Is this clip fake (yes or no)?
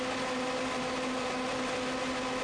no